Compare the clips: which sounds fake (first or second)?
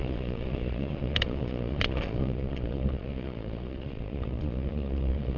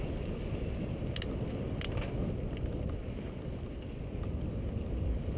first